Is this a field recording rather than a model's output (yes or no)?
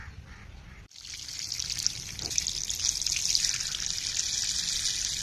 yes